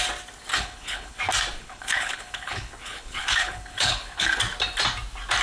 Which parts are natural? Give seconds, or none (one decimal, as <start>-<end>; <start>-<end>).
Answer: 0.0-0.5; 1.2-1.6; 4.4-5.4